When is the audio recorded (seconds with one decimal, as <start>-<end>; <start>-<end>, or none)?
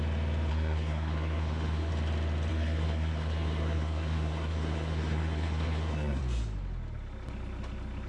0.0-0.5; 1.9-2.5; 6.2-8.1